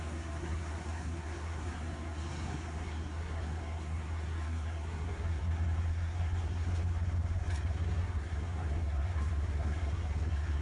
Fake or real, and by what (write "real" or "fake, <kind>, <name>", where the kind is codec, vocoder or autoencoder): fake, codec, SNAC